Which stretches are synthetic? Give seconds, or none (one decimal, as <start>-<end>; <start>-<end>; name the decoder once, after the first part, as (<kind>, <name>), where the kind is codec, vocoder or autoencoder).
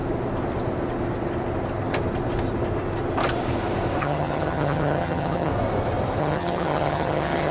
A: 4.0-5.5 (vocoder, HiFi-GAN); 6.2-7.5